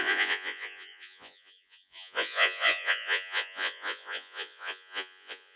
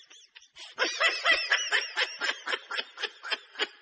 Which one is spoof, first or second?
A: first